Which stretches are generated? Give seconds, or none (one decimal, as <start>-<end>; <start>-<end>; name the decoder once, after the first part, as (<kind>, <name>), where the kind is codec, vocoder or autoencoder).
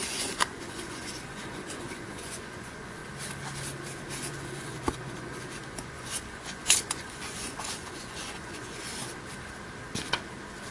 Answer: 0.0-3.0 (vocoder, Vocos); 4.2-8.9